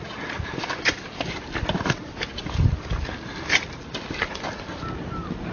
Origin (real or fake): real